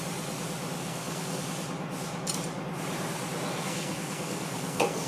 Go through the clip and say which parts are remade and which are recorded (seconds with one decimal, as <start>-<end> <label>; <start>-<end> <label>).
0.0-0.8 recorded; 0.8-1.4 remade; 1.4-3.5 recorded; 3.5-5.1 remade